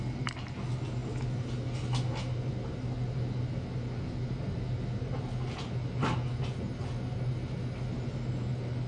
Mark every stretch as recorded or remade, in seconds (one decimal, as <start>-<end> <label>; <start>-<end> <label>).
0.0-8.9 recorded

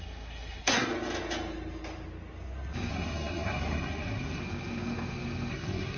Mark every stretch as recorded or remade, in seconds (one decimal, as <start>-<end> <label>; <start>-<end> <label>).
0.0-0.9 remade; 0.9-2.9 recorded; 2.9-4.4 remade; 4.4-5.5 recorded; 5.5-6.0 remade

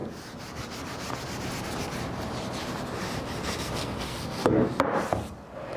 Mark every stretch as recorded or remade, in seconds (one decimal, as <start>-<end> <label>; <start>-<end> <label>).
0.0-3.4 recorded; 3.4-4.6 remade; 4.6-5.8 recorded

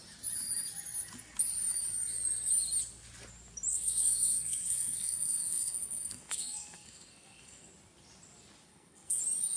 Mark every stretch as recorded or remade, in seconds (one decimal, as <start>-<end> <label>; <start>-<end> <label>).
0.0-3.7 recorded; 3.7-7.7 remade; 7.7-8.7 recorded; 8.7-9.2 remade; 9.2-9.6 recorded

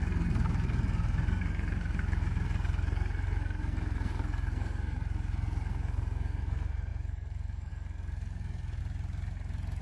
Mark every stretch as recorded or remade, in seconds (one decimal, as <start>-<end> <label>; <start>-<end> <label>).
0.0-8.8 remade; 8.8-9.8 recorded

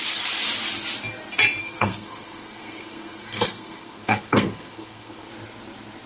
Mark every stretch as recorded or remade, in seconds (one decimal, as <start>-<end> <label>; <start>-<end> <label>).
0.0-1.6 recorded; 1.6-5.3 remade; 5.3-6.1 recorded

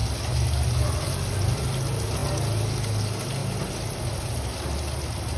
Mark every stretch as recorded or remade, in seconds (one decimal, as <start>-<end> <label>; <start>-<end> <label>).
0.0-5.4 recorded